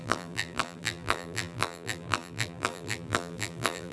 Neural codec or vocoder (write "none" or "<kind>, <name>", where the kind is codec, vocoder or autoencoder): vocoder, BigVGAN v2